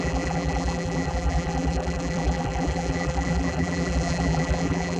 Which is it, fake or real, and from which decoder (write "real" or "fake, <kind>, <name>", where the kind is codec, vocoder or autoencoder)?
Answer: fake, vocoder, BigVGAN v2